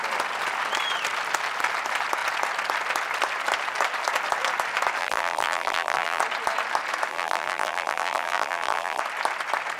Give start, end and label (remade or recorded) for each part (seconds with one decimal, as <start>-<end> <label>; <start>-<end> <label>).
0.0-5.0 recorded; 5.0-6.2 remade; 6.2-7.1 recorded; 7.1-9.0 remade; 9.0-9.8 recorded